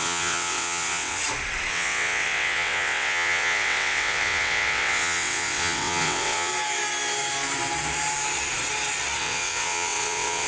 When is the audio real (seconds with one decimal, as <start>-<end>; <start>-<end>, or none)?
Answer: 1.2-1.7; 6.5-9.2